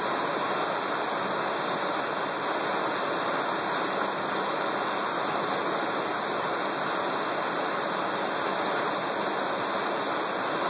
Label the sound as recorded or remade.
recorded